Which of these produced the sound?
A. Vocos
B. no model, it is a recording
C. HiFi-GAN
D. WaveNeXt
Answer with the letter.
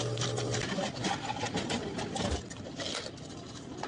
B